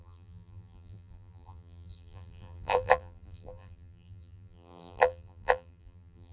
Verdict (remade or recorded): remade